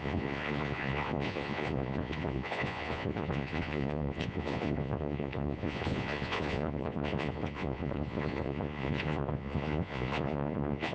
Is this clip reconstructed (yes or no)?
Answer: yes